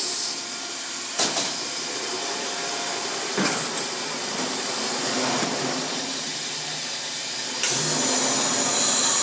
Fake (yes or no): no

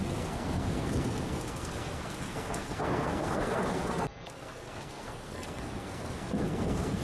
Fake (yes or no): yes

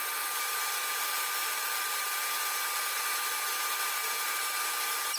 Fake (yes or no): no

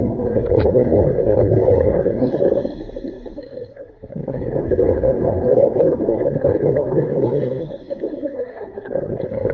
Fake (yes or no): yes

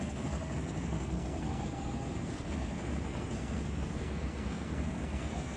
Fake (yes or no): yes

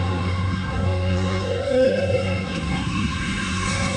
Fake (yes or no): yes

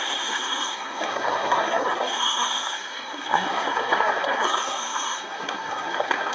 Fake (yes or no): yes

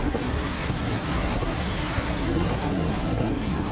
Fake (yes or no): yes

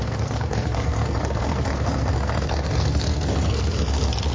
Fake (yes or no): yes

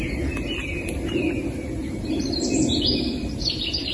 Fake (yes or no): no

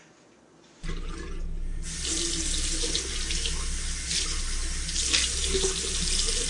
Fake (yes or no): no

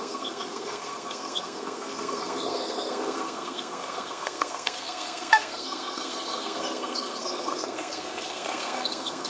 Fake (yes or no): yes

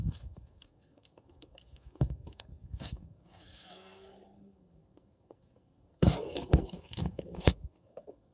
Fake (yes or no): yes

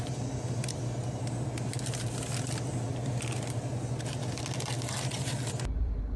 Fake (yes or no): no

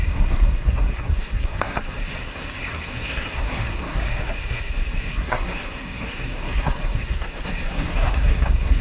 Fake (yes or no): yes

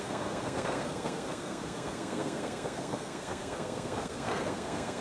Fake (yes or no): yes